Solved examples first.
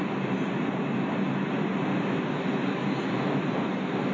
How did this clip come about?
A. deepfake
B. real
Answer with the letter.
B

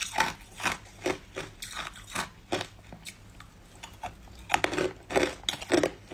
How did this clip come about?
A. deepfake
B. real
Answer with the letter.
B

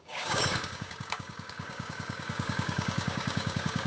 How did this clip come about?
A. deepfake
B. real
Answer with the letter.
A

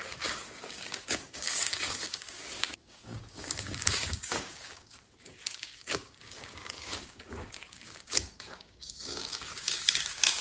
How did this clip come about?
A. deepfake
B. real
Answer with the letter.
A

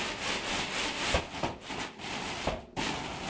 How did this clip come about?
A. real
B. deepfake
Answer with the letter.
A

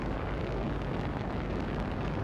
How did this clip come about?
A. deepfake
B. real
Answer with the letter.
A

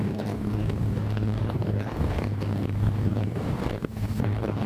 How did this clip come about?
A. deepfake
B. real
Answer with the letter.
A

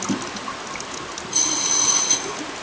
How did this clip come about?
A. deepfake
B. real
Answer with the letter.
B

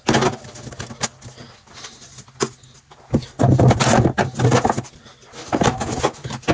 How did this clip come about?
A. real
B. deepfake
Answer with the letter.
A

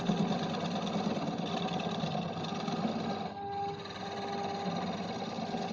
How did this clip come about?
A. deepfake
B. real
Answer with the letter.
B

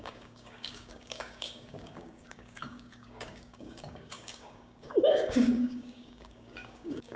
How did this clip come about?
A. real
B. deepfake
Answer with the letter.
B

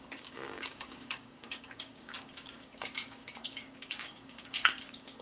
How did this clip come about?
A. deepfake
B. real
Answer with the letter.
A